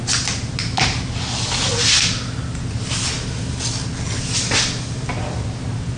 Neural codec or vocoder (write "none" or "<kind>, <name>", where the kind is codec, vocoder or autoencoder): none